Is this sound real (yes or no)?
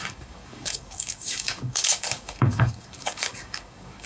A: no